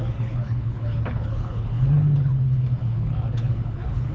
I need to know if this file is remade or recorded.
remade